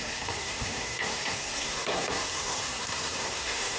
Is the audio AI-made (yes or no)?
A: yes